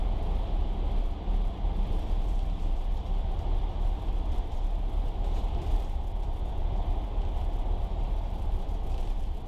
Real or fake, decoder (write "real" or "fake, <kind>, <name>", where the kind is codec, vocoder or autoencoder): fake, vocoder, BigVGAN v2